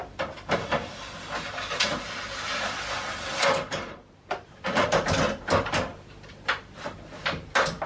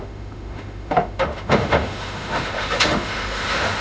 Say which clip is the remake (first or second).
second